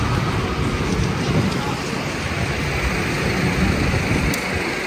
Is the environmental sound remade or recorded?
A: recorded